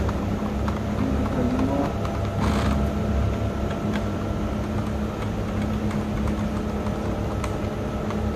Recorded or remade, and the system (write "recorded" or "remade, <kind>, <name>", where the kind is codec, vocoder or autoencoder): recorded